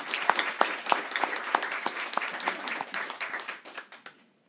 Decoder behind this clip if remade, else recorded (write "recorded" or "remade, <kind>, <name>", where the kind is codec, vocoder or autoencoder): recorded